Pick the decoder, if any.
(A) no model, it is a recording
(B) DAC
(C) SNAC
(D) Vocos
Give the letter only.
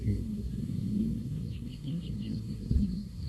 C